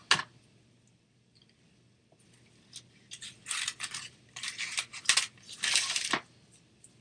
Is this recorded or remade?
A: recorded